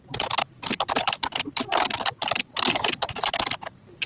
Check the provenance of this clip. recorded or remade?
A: recorded